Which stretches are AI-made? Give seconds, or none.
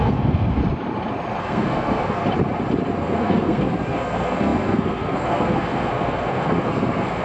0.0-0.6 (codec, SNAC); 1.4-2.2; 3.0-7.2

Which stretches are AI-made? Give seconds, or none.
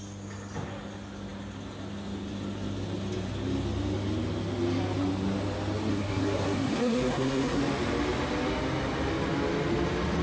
5.9-7.6 (codec, SNAC)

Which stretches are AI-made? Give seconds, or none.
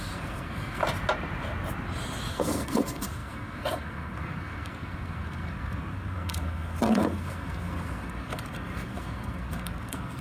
0.0-0.8 (codec, SNAC); 2.3-10.2